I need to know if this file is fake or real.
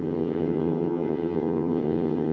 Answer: fake